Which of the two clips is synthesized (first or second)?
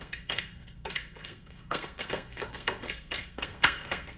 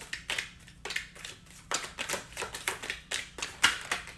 first